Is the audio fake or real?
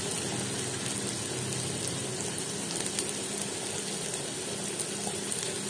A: real